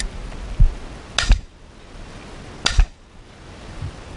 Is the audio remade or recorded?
recorded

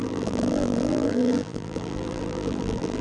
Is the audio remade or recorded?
remade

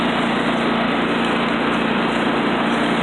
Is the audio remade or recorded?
recorded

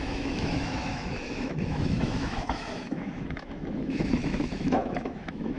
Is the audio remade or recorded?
remade